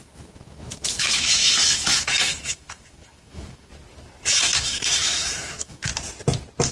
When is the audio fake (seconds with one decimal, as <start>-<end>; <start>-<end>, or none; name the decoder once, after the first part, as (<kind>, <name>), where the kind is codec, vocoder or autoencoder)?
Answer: 0.0-3.7 (autoencoder, DAC-VAE); 4.4-5.9